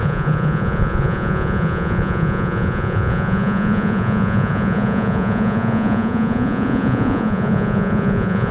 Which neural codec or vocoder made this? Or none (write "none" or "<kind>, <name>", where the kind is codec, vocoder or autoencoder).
vocoder, Vocos